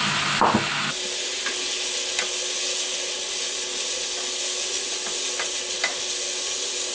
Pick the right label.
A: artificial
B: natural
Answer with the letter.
B